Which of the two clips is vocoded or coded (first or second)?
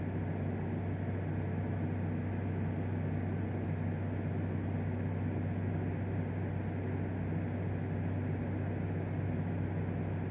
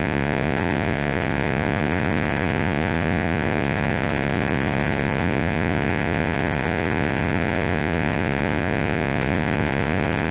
second